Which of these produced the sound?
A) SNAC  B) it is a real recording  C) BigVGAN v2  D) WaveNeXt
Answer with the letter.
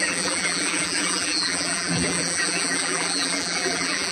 C